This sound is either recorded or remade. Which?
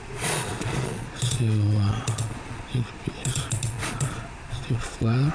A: remade